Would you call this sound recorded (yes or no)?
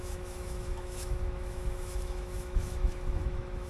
no